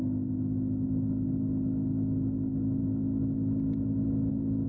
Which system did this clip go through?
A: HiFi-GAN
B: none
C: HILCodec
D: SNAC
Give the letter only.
B